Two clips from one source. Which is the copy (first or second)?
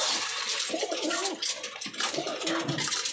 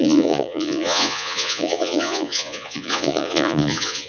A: second